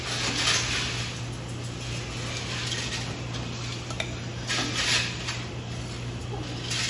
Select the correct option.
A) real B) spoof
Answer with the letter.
A